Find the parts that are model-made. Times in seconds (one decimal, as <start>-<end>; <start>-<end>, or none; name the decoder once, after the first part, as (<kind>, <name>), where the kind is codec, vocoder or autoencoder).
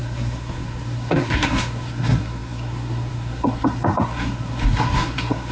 0.0-5.5 (codec, SNAC)